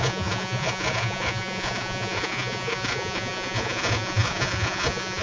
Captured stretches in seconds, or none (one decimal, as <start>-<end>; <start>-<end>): none